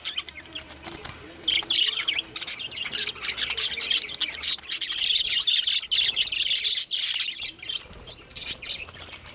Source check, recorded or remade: recorded